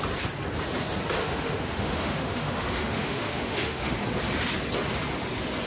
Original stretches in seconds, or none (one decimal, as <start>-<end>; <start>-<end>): 0.0-1.2; 4.0-5.7